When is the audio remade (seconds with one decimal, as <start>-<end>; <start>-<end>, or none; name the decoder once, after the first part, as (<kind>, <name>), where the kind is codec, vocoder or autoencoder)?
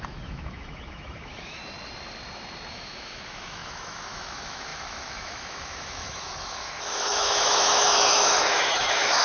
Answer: 0.0-1.6 (autoencoder, DAC-VAE); 2.7-9.2